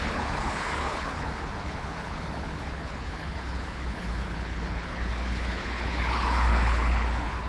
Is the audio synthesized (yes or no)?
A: yes